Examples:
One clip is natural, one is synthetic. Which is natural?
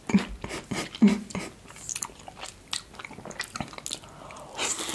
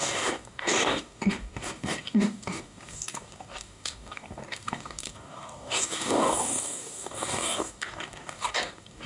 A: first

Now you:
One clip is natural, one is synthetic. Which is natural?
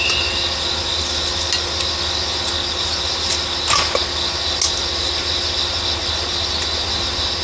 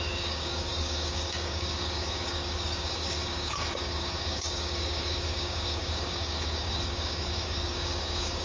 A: first